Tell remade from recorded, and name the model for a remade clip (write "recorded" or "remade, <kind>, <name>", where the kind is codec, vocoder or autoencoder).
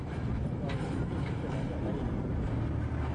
recorded